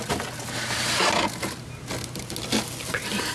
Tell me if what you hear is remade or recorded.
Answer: recorded